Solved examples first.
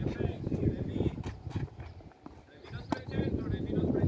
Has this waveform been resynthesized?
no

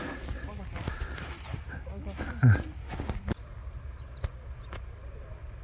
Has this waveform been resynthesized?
no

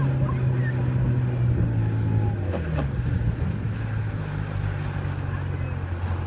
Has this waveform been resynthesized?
no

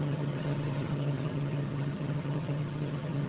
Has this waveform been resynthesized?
yes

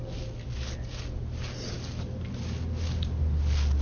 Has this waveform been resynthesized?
no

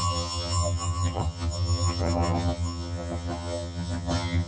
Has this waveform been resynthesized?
yes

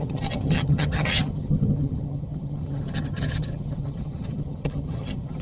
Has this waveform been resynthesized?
yes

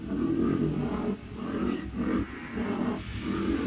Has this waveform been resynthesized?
no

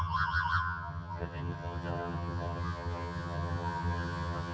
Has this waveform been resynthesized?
yes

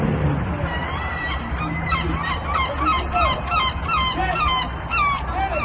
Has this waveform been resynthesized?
no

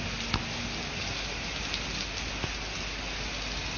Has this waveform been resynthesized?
no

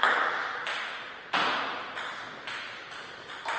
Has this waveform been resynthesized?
no